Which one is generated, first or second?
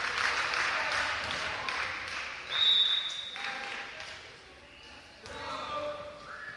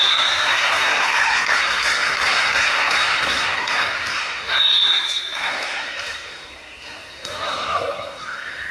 second